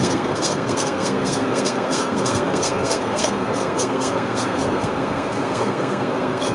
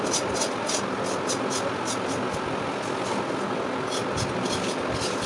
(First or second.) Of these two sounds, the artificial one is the first